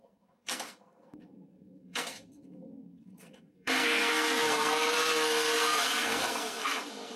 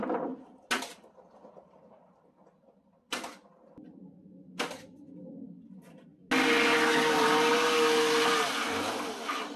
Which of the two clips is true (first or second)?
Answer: second